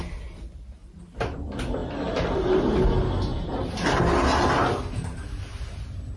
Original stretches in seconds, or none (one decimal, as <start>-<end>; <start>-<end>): 0.0-0.8; 1.4-6.2